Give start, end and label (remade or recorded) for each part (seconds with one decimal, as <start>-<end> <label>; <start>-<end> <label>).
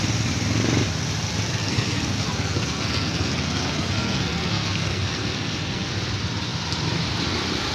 0.0-1.6 recorded; 1.6-5.9 remade; 5.9-7.7 recorded